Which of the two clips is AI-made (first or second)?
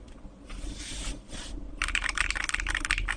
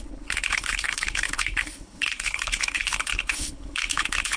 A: second